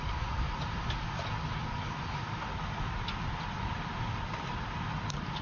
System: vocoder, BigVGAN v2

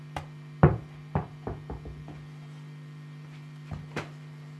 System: vocoder, BigVGAN v2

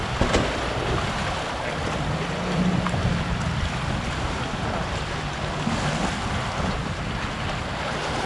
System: none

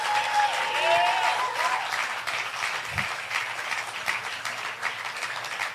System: none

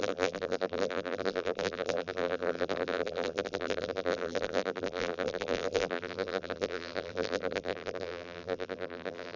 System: vocoder, BigVGAN v2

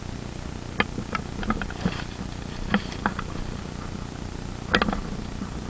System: none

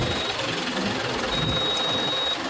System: none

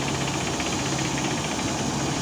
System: none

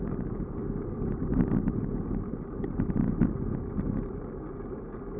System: none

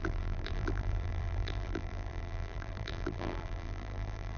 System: vocoder, BigVGAN v2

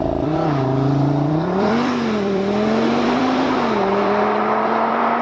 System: vocoder, BigVGAN v2